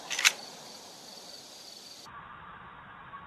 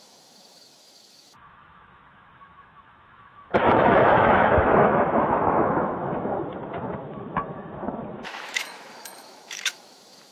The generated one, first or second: second